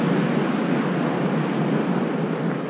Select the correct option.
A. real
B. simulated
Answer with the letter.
A